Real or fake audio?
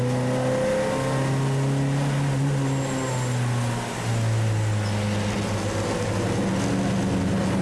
real